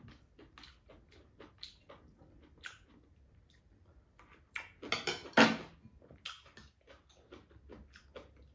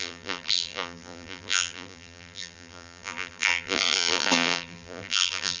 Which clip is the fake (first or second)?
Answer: second